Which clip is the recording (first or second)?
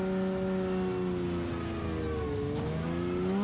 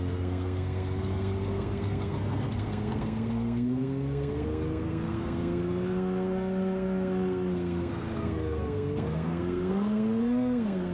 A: first